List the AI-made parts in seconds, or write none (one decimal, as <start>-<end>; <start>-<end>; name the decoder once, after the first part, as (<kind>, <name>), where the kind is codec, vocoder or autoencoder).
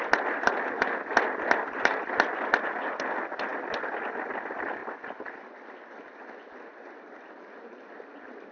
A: none